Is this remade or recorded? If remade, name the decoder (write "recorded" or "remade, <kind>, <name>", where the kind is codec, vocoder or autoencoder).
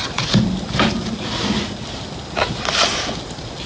recorded